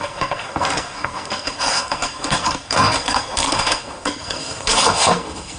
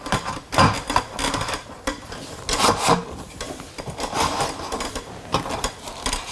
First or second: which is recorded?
second